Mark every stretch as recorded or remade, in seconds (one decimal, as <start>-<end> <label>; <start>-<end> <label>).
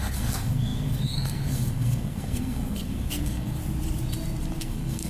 0.0-3.6 remade; 3.6-4.6 recorded; 4.6-5.1 remade